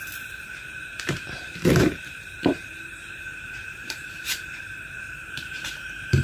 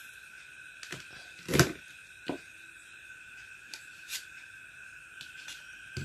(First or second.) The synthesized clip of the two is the first